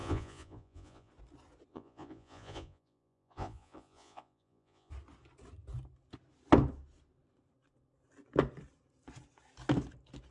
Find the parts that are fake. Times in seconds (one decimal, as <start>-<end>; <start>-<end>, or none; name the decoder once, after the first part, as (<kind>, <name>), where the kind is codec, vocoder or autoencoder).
0.0-1.1 (vocoder, Vocos); 1.7-4.9